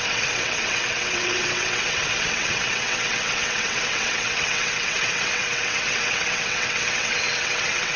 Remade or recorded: remade